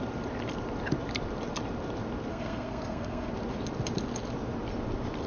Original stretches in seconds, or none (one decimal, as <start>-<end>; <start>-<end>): 0.0-2.3; 3.3-5.3